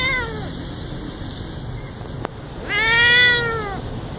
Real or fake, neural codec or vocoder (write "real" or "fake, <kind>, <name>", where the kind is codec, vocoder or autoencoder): real